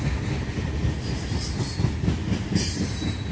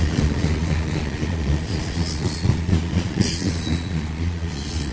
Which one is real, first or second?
first